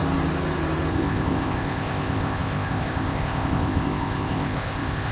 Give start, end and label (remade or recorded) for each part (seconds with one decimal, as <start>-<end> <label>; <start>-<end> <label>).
0.0-0.9 recorded; 0.9-5.1 remade